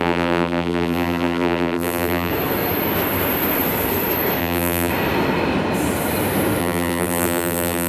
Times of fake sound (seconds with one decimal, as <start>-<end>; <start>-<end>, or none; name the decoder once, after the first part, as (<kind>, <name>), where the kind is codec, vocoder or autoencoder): 0.0-2.3 (vocoder, BigVGAN v2); 4.4-4.9; 6.6-7.9